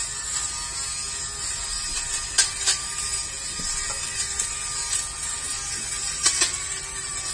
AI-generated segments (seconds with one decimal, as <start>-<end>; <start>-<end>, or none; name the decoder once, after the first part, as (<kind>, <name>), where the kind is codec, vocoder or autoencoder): none